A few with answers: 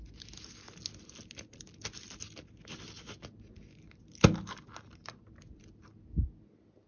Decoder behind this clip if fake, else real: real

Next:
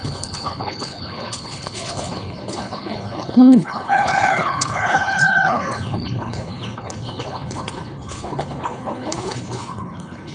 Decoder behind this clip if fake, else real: fake, codec, HILCodec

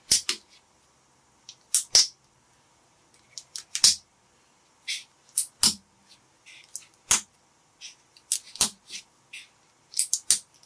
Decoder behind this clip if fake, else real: real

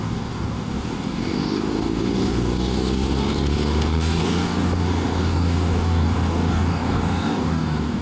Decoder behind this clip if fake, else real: fake, codec, DAC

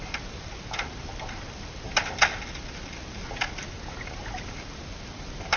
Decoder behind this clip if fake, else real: real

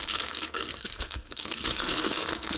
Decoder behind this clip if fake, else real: fake, codec, SNAC